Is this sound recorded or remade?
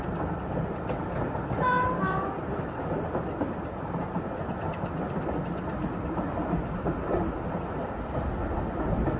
recorded